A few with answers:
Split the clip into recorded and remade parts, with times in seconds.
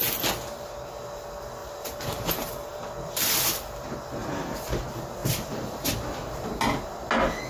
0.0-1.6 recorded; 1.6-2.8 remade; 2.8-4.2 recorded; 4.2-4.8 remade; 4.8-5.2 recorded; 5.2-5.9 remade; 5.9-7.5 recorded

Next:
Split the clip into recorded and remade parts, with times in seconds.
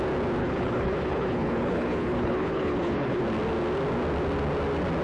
0.0-0.4 recorded; 0.4-3.2 remade; 3.2-5.0 recorded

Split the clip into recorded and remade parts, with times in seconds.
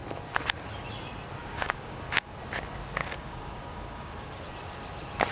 0.0-1.4 recorded; 1.4-2.0 remade; 2.0-3.0 recorded; 3.0-4.4 remade; 4.4-5.3 recorded